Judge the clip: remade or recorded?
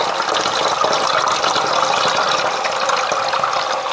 recorded